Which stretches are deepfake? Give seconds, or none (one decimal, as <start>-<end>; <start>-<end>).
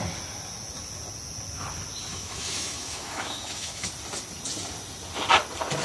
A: 2.1-3.9